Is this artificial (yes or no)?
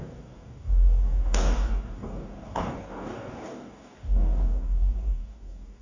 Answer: yes